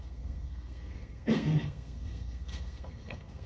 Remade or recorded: remade